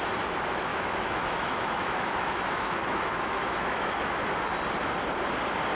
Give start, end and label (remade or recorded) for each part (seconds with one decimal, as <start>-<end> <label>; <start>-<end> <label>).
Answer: 0.0-0.7 recorded; 0.7-4.1 remade; 4.1-5.7 recorded